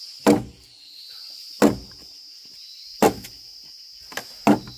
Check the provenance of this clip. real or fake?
real